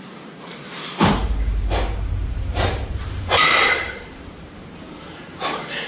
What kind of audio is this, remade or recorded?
remade